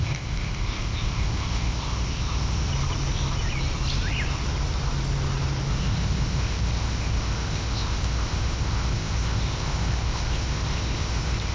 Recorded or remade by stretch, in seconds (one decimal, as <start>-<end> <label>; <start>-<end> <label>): 0.0-2.7 remade; 2.7-5.7 recorded; 5.7-11.5 remade

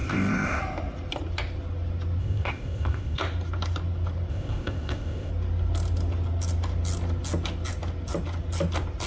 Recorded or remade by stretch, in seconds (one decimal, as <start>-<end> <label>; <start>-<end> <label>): 0.0-0.6 remade; 0.6-2.2 recorded; 2.2-3.2 remade; 3.2-4.3 recorded; 4.3-5.3 remade; 5.3-9.1 recorded

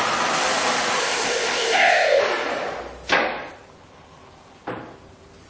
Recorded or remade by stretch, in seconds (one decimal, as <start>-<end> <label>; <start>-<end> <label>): 0.0-1.0 recorded; 1.0-2.2 remade; 2.2-5.5 recorded

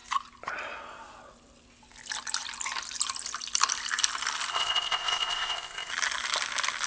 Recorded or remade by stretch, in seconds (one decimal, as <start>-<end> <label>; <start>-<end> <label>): 0.0-4.5 recorded; 4.5-5.9 remade; 5.9-6.9 recorded

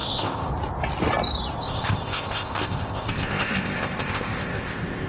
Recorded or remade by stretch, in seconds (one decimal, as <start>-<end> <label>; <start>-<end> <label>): 0.0-0.5 remade; 0.5-1.6 recorded; 1.6-5.1 remade

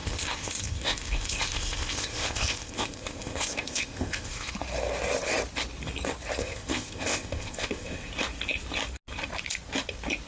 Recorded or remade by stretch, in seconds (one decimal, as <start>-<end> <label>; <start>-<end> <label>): 0.0-4.5 remade; 4.5-6.4 recorded; 6.4-8.1 remade; 8.1-10.3 recorded